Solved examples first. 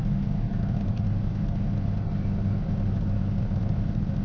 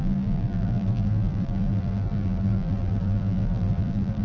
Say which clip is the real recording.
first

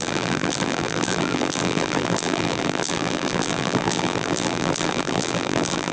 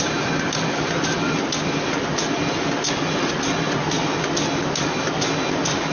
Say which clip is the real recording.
second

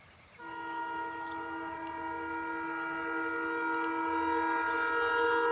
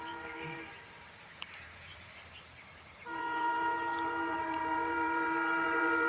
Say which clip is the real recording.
first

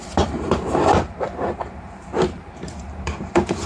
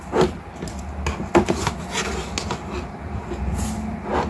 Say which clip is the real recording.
second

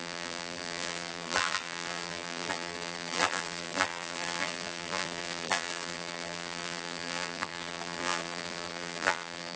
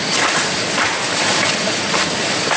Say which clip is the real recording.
second